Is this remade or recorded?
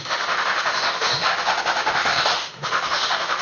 remade